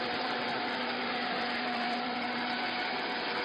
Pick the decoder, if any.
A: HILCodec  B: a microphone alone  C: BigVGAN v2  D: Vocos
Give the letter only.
C